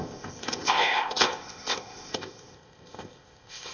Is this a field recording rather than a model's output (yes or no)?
no